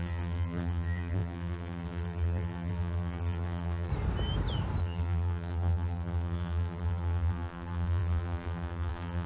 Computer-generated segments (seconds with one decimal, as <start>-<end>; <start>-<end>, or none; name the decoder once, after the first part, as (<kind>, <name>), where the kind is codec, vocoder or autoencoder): 0.0-3.9 (vocoder, BigVGAN v2); 4.8-9.3